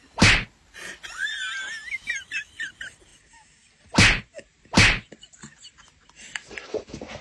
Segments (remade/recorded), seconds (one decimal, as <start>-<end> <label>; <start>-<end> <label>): 0.0-7.2 recorded